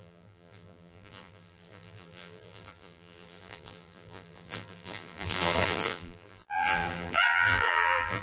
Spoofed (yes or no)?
yes